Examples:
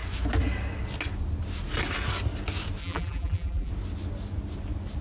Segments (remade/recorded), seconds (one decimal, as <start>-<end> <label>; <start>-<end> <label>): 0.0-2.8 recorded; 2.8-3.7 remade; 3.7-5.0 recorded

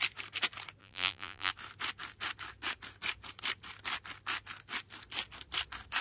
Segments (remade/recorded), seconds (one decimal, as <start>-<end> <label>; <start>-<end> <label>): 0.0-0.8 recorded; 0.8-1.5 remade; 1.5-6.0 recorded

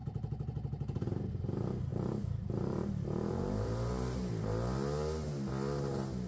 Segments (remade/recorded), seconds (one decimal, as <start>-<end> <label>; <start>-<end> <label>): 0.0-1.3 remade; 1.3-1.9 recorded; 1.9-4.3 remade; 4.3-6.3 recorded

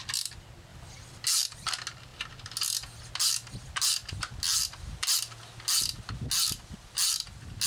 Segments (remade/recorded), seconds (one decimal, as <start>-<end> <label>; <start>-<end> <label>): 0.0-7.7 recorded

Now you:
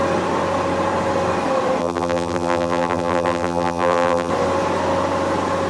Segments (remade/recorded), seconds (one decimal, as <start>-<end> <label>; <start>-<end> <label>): 0.0-1.8 recorded; 1.8-4.3 remade; 4.3-5.7 recorded